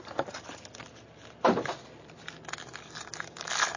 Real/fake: real